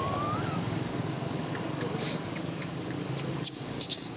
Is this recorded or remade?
remade